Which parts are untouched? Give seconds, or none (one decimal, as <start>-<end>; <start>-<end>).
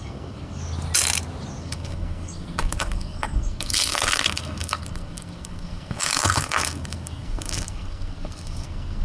0.6-1.6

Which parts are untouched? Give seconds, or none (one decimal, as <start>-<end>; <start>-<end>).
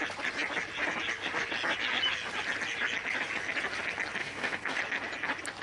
0.0-4.2; 4.8-5.6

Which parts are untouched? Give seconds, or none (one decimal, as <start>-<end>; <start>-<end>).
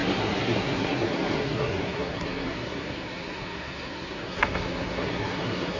none